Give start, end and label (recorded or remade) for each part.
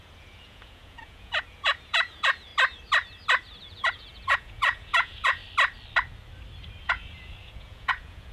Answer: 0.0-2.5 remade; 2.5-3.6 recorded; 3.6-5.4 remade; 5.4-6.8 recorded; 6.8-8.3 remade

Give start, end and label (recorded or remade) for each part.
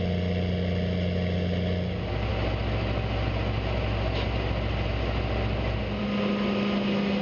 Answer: 0.0-7.2 recorded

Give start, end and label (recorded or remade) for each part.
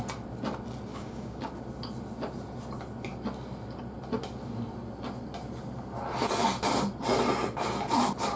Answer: 0.0-0.9 recorded; 0.9-1.5 remade; 1.5-8.4 recorded